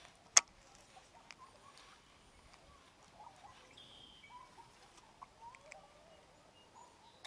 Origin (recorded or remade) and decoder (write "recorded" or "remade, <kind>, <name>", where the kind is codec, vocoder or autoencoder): recorded